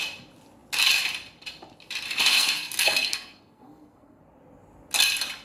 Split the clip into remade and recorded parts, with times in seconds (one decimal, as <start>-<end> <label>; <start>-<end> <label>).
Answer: 0.0-2.2 recorded; 2.2-4.2 remade; 4.2-5.4 recorded

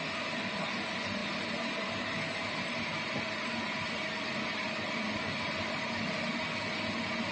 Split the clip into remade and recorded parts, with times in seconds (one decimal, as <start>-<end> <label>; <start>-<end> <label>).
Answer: 0.0-7.3 recorded

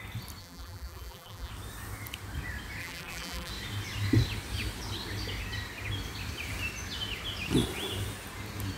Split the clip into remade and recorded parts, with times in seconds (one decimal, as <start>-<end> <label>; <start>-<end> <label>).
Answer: 0.0-0.4 recorded; 0.4-1.5 remade; 1.5-2.8 recorded; 2.8-3.5 remade; 3.5-8.8 recorded

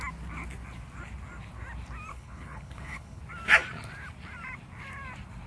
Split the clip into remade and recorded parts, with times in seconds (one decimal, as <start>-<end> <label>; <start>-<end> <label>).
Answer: 0.0-2.1 recorded; 2.1-3.2 remade; 3.2-5.5 recorded

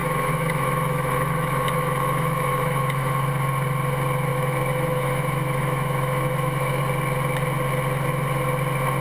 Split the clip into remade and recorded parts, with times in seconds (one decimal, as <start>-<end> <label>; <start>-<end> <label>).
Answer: 0.0-3.3 remade; 3.3-4.3 recorded; 4.3-6.8 remade; 6.8-9.0 recorded

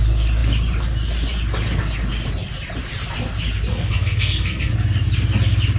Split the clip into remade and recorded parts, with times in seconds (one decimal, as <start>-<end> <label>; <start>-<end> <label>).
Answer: 0.0-3.7 recorded; 3.7-4.7 remade; 4.7-5.8 recorded

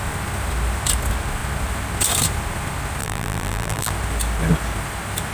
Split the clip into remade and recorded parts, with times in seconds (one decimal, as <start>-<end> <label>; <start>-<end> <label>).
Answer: 0.0-3.0 recorded; 3.0-3.9 remade; 3.9-5.3 recorded

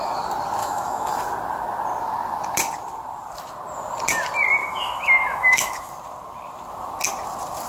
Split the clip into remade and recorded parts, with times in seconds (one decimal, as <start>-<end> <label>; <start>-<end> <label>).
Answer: 0.0-0.6 recorded; 0.6-1.1 remade; 1.1-4.6 recorded; 4.6-5.9 remade; 5.9-7.7 recorded